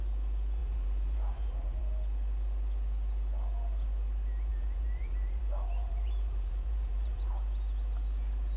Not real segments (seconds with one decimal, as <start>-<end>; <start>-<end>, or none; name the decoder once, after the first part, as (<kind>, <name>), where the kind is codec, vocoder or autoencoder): 0.6-1.8 (vocoder, BigVGAN v2); 4.5-7.3